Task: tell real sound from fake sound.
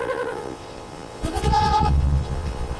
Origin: fake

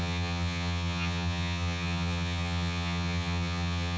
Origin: fake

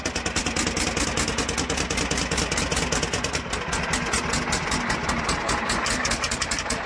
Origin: real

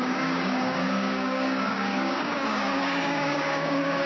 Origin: fake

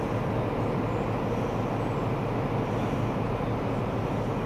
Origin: real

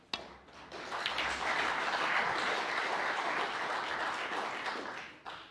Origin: real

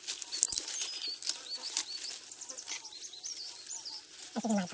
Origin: real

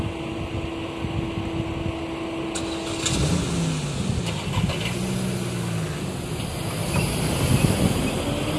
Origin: real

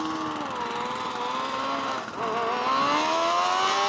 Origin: real